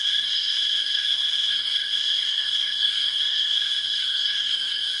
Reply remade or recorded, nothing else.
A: remade